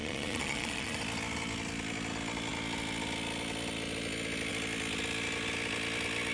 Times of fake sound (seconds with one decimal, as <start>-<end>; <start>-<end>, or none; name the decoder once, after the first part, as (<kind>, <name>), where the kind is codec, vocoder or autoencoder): 0.0-1.0 (vocoder, Vocos)